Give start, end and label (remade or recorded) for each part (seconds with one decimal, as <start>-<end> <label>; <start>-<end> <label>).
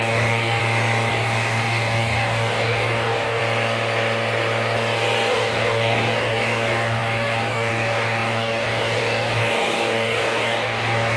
0.0-0.6 remade; 0.6-1.1 recorded; 1.1-3.4 remade; 3.4-5.3 recorded; 5.3-11.2 remade